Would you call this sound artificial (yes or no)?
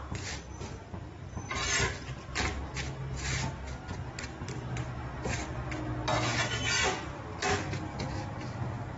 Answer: no